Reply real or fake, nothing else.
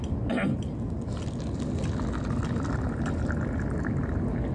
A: real